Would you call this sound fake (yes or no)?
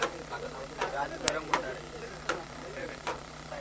yes